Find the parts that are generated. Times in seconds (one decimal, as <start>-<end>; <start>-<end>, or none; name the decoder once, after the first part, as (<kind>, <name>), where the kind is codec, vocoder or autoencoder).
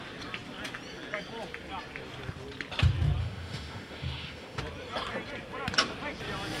3.2-4.6 (autoencoder, DAC-VAE)